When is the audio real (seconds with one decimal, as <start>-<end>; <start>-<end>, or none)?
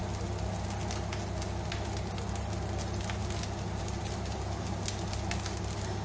0.0-6.0